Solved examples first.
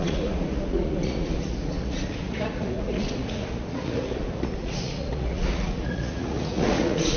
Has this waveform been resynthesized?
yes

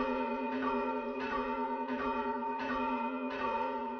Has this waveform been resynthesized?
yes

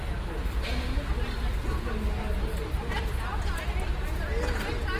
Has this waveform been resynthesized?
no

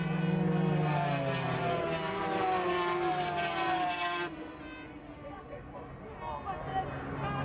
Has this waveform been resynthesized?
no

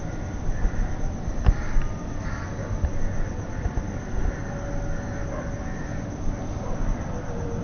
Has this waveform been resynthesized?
no